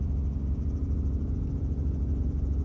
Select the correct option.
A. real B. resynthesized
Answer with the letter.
A